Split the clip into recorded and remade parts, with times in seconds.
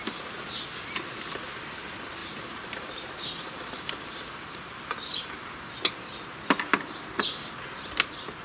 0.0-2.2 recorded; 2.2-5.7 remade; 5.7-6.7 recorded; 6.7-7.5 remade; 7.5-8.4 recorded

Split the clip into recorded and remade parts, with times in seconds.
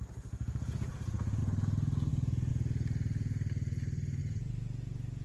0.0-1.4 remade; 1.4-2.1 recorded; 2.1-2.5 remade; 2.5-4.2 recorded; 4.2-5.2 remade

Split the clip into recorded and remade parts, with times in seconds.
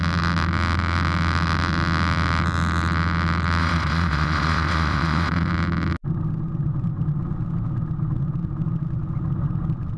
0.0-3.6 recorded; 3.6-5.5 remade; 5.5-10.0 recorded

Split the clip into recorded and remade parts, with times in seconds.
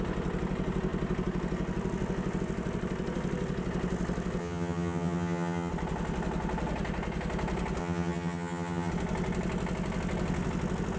0.0-4.4 recorded; 4.4-5.7 remade; 5.7-7.8 recorded; 7.8-8.9 remade; 8.9-11.0 recorded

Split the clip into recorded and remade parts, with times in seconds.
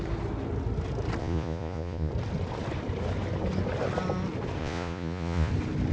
0.0-1.2 recorded; 1.2-2.1 remade; 2.1-4.6 recorded; 4.6-5.5 remade; 5.5-5.9 recorded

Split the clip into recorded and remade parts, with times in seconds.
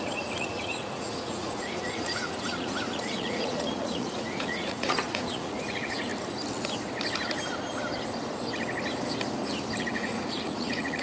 0.0-6.1 remade; 6.1-9.8 recorded; 9.8-11.0 remade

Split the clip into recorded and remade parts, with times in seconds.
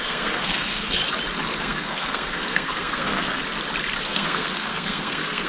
0.0-1.0 remade; 1.0-1.6 recorded; 1.6-3.4 remade; 3.4-4.0 recorded; 4.0-5.5 remade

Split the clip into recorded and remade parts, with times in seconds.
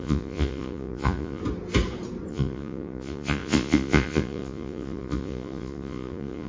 0.0-1.4 remade; 1.4-2.3 recorded; 2.3-6.5 remade